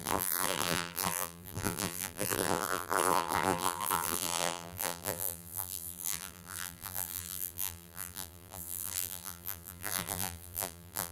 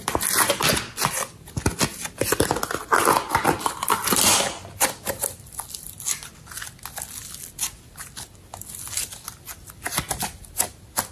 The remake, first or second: first